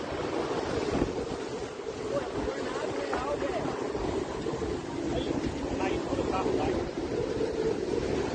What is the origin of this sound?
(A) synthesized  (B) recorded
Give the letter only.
B